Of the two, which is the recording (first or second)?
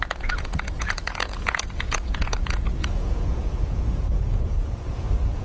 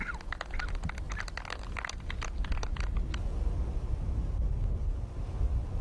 second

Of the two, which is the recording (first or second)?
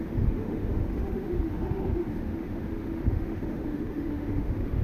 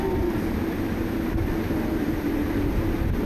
second